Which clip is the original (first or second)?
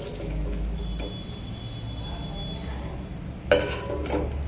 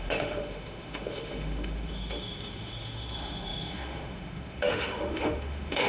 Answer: first